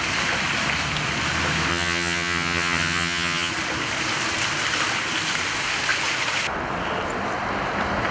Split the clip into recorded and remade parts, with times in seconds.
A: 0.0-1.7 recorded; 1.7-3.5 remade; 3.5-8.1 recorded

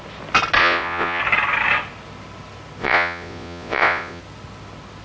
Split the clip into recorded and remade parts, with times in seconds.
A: 0.0-0.6 recorded; 0.6-1.2 remade; 1.2-2.8 recorded; 2.8-4.2 remade; 4.2-5.0 recorded

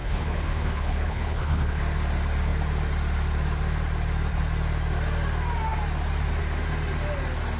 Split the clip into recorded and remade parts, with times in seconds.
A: 0.0-1.8 remade; 1.8-7.6 recorded

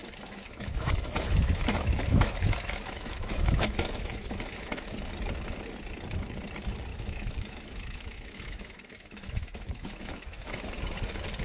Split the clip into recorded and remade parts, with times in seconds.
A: 0.0-4.9 remade; 4.9-6.9 recorded; 6.9-10.6 remade; 10.6-11.4 recorded

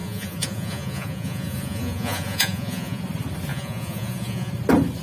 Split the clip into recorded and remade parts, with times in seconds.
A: 0.0-3.0 remade; 3.0-3.5 recorded; 3.5-4.5 remade; 4.5-5.0 recorded

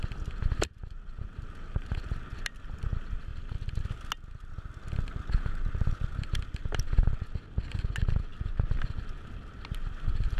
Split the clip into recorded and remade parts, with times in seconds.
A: 0.0-10.4 recorded